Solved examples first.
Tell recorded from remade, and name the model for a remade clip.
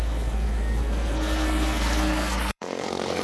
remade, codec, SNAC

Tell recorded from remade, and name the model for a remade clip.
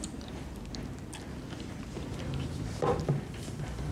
recorded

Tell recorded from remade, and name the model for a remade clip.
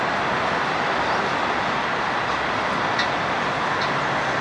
recorded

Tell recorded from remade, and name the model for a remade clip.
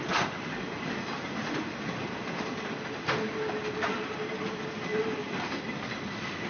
recorded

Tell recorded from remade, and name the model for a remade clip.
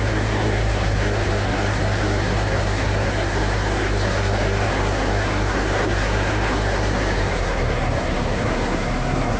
remade, codec, SNAC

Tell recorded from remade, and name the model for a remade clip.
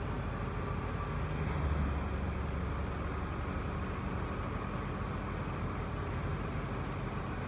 recorded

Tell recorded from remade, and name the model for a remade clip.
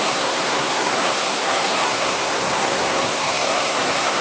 remade, codec, SNAC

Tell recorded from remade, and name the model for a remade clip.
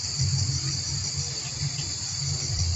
recorded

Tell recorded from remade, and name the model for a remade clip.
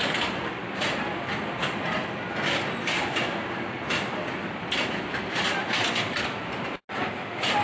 recorded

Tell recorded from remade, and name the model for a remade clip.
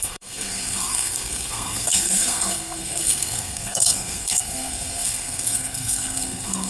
remade, codec, SNAC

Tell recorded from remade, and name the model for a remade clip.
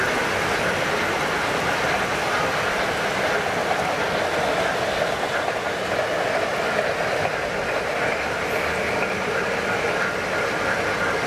recorded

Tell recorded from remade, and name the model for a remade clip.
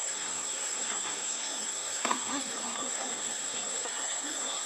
remade, codec, SNAC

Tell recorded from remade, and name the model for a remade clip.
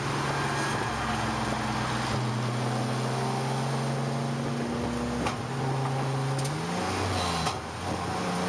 recorded